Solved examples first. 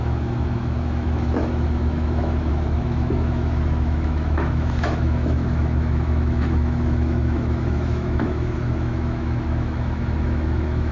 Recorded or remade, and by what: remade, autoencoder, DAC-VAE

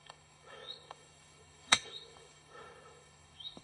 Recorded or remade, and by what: remade, autoencoder, DAC-VAE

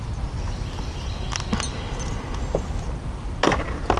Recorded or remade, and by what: recorded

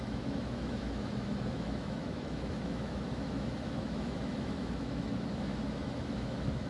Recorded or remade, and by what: remade, autoencoder, DAC-VAE